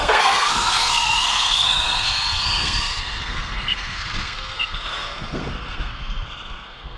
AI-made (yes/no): yes